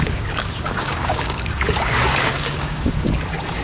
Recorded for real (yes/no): no